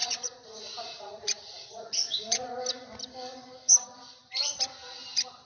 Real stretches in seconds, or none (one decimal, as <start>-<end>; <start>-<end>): 2.6-5.4